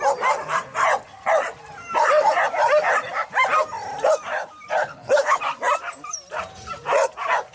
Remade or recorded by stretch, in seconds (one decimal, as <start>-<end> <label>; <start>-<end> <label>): 0.0-4.8 recorded; 4.8-5.4 remade; 5.4-7.5 recorded